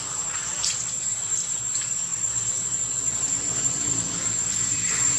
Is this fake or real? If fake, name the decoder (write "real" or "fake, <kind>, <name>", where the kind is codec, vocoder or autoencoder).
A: fake, vocoder, BigVGAN v2